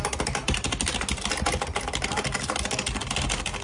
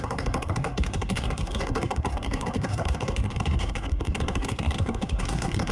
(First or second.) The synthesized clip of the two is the second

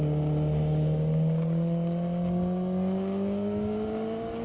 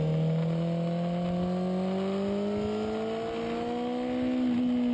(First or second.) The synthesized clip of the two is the first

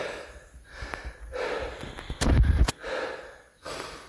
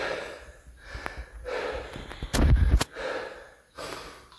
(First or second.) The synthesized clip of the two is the first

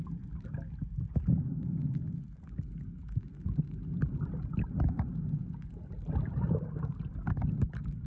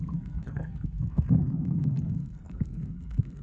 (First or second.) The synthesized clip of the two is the second